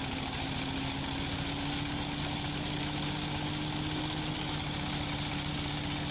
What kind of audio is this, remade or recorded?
recorded